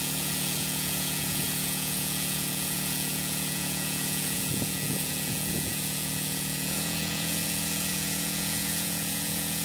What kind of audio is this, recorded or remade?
remade